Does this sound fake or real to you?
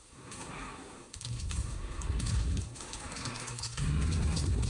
fake